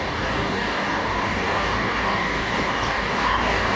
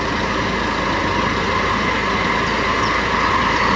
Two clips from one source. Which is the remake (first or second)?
first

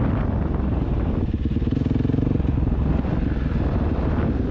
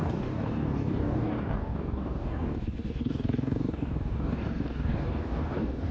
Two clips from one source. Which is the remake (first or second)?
second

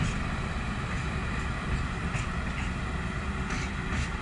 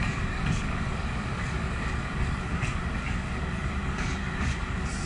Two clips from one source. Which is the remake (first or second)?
second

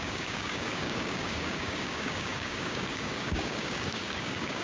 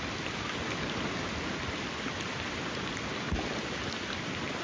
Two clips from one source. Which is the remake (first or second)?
first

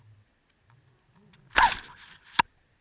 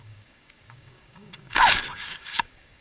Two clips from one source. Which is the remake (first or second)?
second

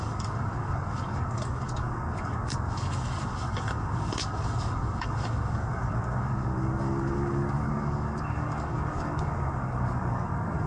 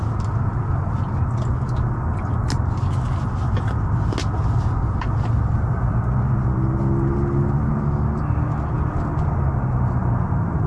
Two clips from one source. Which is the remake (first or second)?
first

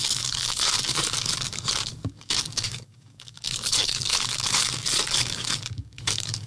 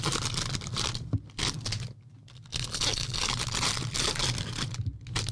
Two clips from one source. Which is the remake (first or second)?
first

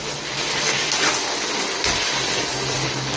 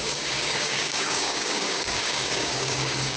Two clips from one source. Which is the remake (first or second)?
second